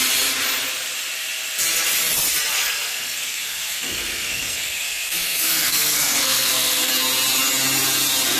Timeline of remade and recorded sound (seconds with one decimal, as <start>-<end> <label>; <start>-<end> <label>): 0.0-2.5 recorded; 2.5-6.9 remade; 6.9-8.4 recorded